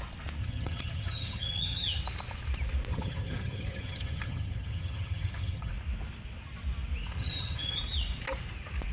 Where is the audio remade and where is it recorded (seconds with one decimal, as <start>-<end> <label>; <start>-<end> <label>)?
0.0-0.4 recorded; 0.4-2.0 remade; 2.0-2.9 recorded; 2.9-5.7 remade; 5.7-7.2 recorded; 7.2-7.8 remade; 7.8-8.9 recorded